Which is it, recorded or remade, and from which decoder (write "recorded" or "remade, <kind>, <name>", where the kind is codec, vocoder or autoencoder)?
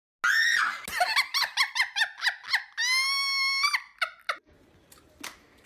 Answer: recorded